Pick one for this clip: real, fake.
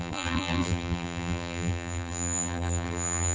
fake